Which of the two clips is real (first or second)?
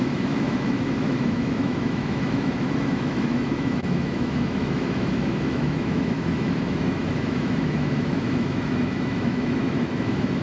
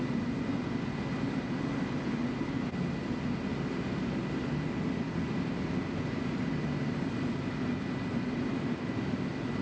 second